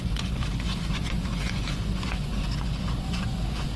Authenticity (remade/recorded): remade